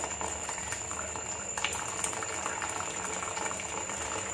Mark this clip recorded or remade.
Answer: remade